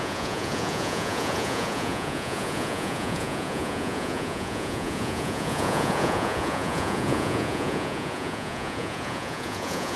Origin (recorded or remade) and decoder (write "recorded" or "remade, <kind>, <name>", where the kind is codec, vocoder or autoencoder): remade, vocoder, Vocos